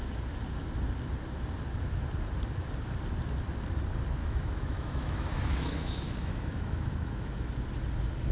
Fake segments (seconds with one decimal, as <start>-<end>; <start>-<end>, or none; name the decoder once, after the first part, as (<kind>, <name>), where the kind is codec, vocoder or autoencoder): 4.2-7.5 (autoencoder, DAC-VAE)